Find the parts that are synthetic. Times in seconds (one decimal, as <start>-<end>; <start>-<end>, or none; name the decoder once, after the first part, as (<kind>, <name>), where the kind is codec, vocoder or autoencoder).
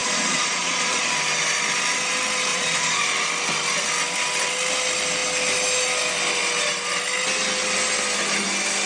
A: 0.0-1.1 (vocoder, Vocos); 2.5-3.0